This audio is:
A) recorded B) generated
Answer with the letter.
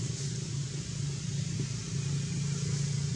A